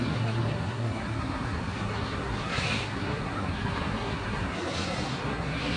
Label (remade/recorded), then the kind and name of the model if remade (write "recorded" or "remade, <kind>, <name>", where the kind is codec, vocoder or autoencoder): remade, codec, SNAC